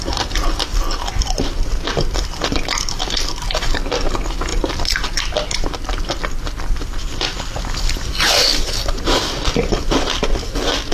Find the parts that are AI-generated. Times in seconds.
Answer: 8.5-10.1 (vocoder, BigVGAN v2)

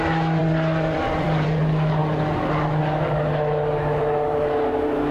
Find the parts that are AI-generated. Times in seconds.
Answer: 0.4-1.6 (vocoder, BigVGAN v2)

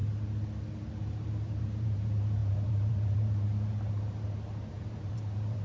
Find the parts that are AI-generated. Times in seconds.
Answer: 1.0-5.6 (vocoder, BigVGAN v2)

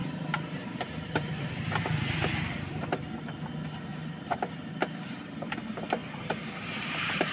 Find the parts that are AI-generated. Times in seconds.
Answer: 0.0-1.5 (vocoder, BigVGAN v2); 3.9-5.5; 6.0-7.3

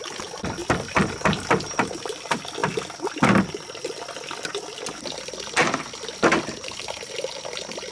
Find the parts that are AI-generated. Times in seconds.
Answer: 0.6-1.5 (vocoder, BigVGAN v2)

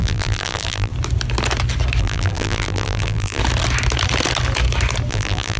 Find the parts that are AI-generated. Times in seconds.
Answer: 0.0-0.9 (vocoder, BigVGAN v2); 2.0-3.4; 5.1-5.6